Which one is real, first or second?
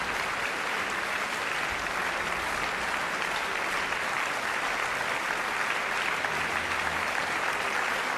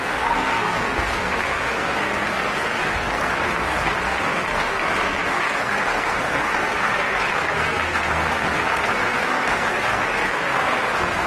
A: first